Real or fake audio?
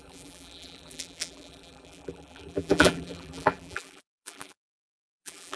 fake